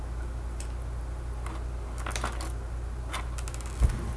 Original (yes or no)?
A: yes